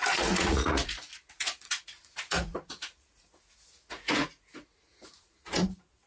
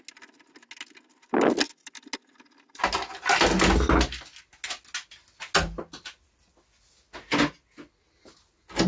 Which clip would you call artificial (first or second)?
first